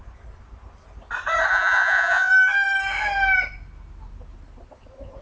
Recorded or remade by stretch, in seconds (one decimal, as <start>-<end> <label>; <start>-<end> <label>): 0.0-1.5 recorded; 1.5-2.3 remade; 2.3-5.2 recorded